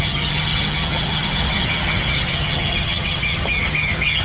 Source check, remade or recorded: remade